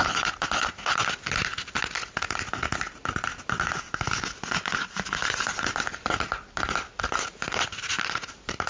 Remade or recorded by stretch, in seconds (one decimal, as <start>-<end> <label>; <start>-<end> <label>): 0.0-8.7 recorded